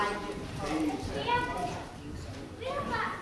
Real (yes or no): no